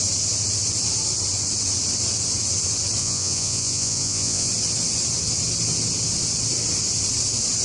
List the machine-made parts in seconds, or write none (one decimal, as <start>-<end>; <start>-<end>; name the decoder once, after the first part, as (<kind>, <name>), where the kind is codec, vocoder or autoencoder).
3.0-4.5 (vocoder, Vocos)